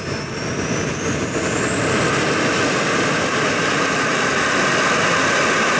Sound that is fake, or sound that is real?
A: real